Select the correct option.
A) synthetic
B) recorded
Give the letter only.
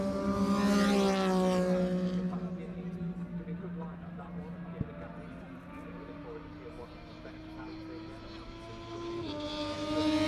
B